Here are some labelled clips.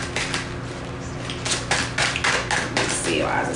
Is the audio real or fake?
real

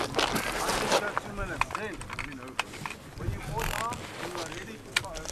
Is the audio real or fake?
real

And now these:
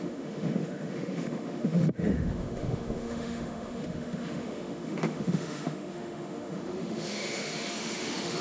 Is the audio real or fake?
fake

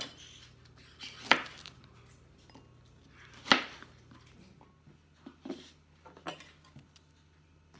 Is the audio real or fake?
real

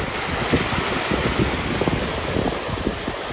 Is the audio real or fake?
real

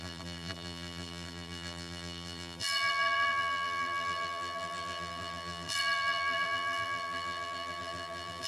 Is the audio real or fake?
fake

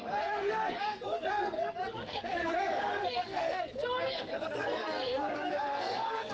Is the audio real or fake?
fake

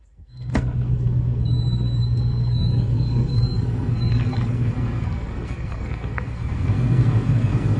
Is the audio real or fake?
fake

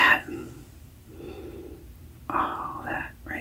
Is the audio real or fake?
fake